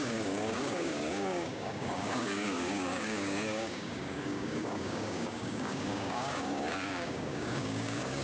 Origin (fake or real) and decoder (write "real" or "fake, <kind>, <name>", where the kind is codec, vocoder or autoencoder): fake, codec, DAC